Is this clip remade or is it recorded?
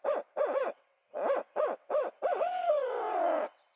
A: remade